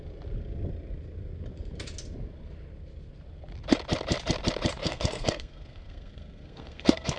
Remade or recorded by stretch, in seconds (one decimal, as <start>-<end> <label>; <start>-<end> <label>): 0.0-4.8 recorded; 4.8-7.2 remade